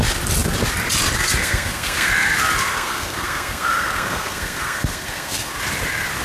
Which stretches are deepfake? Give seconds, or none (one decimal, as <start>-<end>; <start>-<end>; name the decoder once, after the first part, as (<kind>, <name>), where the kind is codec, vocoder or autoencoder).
1.4-2.1 (codec, SNAC); 2.7-5.6